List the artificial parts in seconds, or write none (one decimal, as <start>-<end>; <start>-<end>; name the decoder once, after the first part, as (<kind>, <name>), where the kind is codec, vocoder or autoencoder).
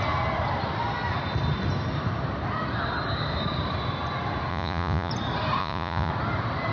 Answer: 4.5-5.1 (vocoder, Vocos); 5.6-6.1